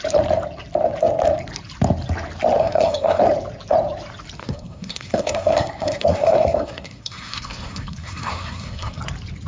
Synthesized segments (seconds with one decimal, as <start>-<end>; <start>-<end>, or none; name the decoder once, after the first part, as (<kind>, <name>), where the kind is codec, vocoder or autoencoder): 2.6-3.2 (codec, SNAC); 4.4-9.0